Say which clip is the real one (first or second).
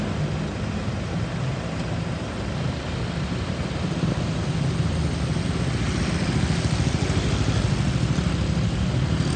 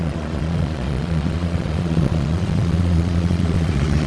first